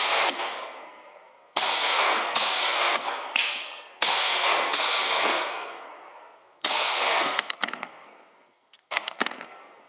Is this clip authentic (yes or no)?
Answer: no